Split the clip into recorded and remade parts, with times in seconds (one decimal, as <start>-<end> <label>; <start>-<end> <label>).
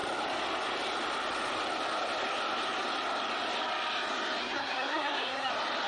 0.0-4.4 recorded; 4.4-5.5 remade; 5.5-5.9 recorded